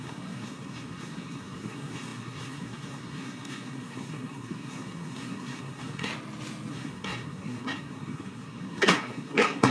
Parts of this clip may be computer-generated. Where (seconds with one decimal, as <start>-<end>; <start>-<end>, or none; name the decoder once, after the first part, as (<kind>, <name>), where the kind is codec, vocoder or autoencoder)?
0.0-6.1 (codec, SNAC); 6.7-9.7